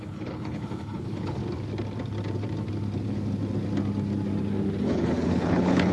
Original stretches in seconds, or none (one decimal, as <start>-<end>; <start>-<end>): 1.4-4.8